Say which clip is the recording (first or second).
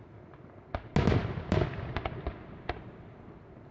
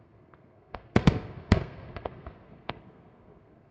first